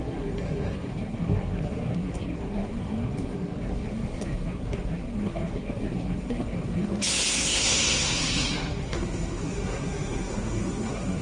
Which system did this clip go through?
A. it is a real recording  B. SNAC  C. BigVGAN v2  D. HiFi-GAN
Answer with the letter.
B